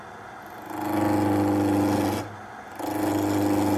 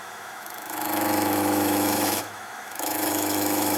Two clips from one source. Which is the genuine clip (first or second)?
first